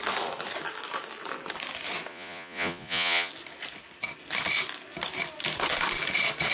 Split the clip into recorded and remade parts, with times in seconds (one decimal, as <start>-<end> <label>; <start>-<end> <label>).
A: 0.0-2.1 recorded; 2.1-3.3 remade; 3.3-6.5 recorded